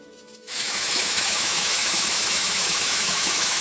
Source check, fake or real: fake